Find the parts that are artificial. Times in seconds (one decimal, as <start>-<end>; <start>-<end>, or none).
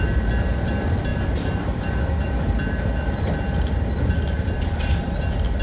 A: none